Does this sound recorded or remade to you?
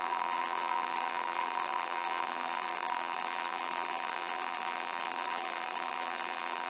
remade